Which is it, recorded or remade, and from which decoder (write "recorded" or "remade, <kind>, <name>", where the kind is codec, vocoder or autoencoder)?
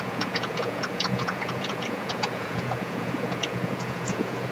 remade, vocoder, Vocos